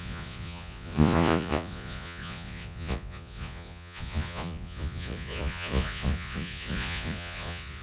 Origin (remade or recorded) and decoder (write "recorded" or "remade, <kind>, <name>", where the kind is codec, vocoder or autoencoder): remade, vocoder, Vocos